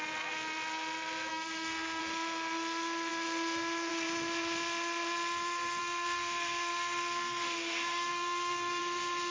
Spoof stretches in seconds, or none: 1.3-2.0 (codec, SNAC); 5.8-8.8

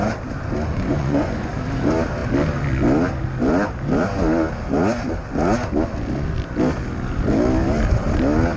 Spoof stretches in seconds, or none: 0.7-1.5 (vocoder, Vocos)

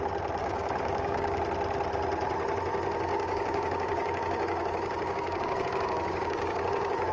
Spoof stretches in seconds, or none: 0.4-1.4 (codec, DAC); 3.1-7.1

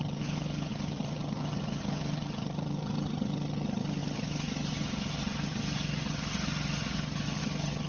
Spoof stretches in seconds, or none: 0.0-7.9 (vocoder, HiFi-GAN)

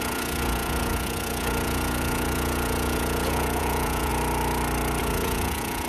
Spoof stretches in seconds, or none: 0.0-4.1 (vocoder, Vocos); 5.0-5.9

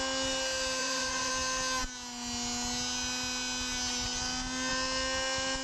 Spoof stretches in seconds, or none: 0.8-1.3 (vocoder, Vocos)

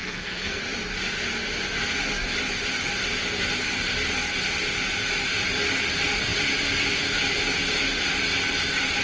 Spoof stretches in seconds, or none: 0.0-0.6 (codec, SNAC)